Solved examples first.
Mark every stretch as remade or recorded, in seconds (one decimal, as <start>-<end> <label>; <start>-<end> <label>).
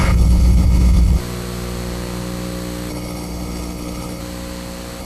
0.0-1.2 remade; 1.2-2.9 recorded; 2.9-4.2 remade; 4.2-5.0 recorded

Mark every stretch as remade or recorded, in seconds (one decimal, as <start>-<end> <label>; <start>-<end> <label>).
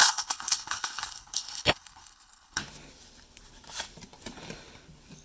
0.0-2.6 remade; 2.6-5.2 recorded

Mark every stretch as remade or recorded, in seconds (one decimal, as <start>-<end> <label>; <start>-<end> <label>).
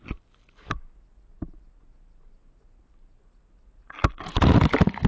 0.0-5.1 recorded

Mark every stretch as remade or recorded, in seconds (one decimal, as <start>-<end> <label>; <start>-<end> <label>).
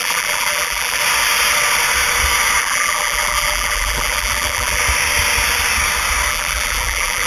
0.0-1.0 remade; 1.0-2.6 recorded; 2.6-4.8 remade; 4.8-6.3 recorded; 6.3-7.3 remade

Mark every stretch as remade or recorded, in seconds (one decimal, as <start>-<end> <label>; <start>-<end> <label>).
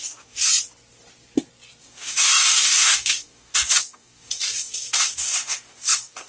0.0-0.5 remade; 0.5-1.8 recorded; 1.8-6.3 remade